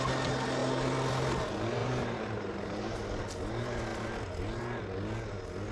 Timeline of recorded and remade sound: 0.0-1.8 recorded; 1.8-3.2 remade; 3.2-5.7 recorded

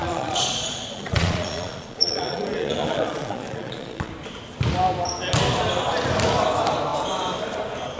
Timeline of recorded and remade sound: 0.0-4.1 remade; 4.1-8.0 recorded

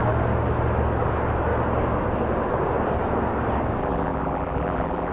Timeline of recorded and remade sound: 0.0-3.8 recorded; 3.8-5.1 remade

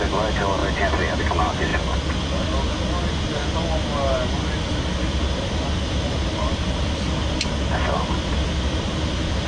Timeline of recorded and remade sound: 0.0-9.5 recorded

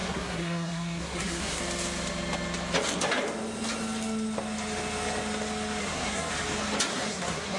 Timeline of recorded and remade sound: 0.0-1.6 remade; 1.6-5.8 recorded; 5.8-6.3 remade; 6.3-6.9 recorded; 6.9-7.6 remade